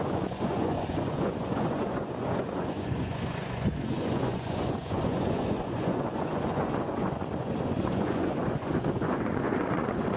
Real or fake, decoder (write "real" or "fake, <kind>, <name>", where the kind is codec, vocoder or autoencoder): fake, vocoder, Vocos